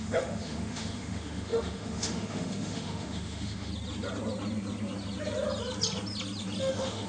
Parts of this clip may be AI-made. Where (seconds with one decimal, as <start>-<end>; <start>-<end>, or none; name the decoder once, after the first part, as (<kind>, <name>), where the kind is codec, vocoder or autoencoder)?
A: 0.0-3.7 (autoencoder, DAC-VAE); 6.6-7.1